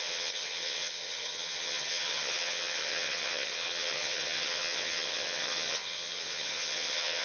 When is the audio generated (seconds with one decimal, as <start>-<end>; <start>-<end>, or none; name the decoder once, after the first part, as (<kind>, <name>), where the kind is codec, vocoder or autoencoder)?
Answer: 0.0-7.2 (vocoder, HiFi-GAN)